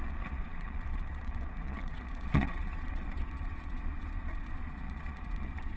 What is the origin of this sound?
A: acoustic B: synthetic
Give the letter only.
B